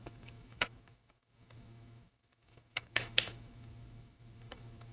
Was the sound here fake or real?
fake